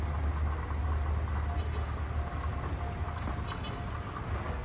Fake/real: real